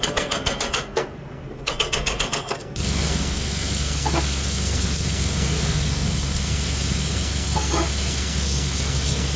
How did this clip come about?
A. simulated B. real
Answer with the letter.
A